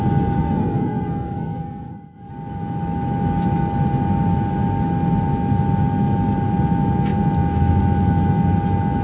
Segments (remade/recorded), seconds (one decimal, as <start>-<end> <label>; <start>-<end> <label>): 0.0-0.4 recorded; 0.4-2.3 remade; 2.3-9.0 recorded